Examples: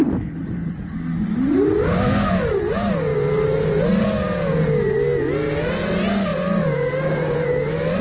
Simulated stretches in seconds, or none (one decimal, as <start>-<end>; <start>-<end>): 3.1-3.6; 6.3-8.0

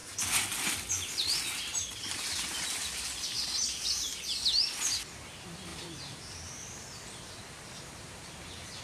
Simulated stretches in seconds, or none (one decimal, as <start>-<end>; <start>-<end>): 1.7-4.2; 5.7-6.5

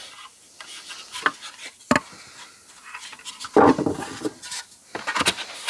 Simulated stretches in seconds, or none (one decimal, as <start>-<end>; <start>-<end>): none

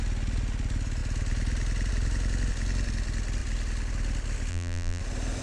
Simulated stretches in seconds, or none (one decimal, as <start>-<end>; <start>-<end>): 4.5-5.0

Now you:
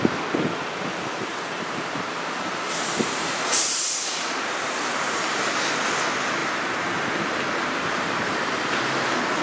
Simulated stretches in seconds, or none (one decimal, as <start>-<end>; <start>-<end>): 0.9-5.2; 6.4-9.4

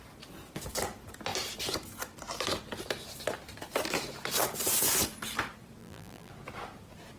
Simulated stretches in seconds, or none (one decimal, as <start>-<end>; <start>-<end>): 5.8-6.3

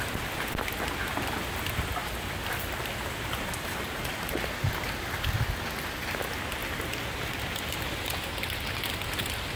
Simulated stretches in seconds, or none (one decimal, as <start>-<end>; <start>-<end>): 2.0-4.2; 6.6-8.0

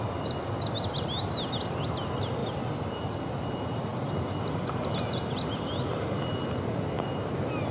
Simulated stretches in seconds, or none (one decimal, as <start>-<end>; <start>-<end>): none